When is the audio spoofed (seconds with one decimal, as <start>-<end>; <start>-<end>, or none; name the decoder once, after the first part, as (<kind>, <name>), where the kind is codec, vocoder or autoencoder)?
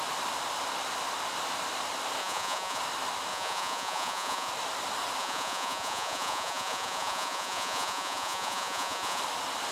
2.2-2.8 (vocoder, Vocos); 3.3-4.5; 5.2-9.2